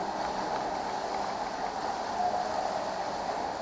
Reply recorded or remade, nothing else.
recorded